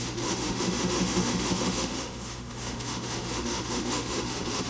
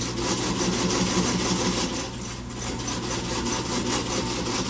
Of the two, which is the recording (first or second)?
second